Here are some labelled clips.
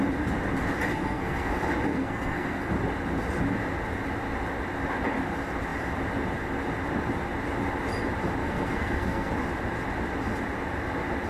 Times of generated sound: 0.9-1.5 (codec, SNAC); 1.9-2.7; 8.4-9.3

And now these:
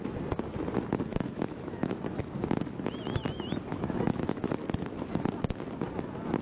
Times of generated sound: 1.1-2.2 (autoencoder, DAC-VAE); 3.7-4.4